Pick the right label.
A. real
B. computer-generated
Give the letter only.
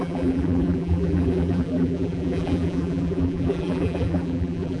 B